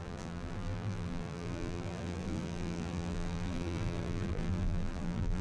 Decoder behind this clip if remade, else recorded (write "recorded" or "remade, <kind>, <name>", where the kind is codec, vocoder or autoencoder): remade, vocoder, BigVGAN v2